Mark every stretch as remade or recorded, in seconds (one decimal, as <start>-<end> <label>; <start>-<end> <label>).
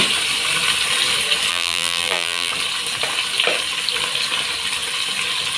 0.0-1.5 recorded; 1.5-2.5 remade; 2.5-5.6 recorded